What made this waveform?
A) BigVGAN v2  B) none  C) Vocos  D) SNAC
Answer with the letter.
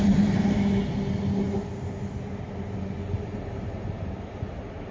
B